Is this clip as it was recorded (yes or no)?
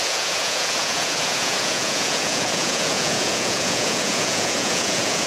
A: no